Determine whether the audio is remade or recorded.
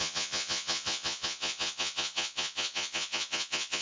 remade